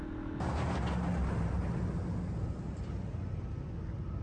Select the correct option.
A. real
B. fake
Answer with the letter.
A